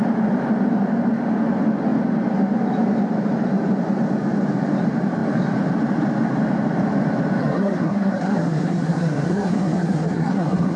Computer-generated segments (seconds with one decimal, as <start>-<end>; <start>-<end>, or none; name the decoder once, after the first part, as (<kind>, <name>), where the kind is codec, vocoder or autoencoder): 7.4-10.8 (codec, SNAC)